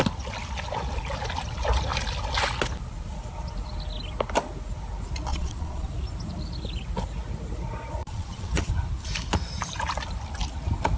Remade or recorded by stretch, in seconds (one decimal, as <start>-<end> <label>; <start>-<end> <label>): 0.0-5.3 recorded; 5.3-5.9 remade; 5.9-8.0 recorded; 8.0-8.7 remade; 8.7-11.0 recorded